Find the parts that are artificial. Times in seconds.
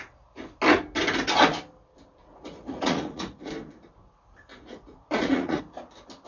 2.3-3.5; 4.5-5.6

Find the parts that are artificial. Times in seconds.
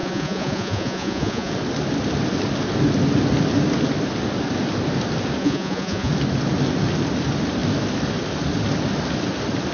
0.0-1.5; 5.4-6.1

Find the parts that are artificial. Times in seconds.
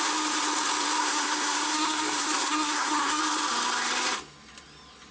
1.0-3.2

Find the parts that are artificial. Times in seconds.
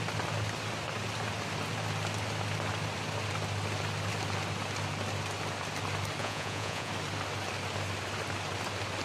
6.2-6.9